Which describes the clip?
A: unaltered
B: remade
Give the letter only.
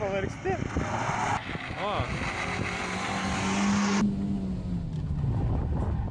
A